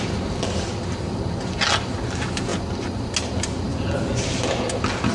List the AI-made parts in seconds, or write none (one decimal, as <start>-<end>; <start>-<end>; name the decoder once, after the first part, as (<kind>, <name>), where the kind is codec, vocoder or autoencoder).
none